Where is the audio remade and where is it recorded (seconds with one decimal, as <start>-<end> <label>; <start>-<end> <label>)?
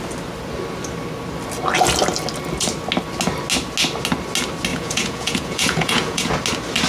0.0-4.7 recorded; 4.7-6.3 remade; 6.3-6.9 recorded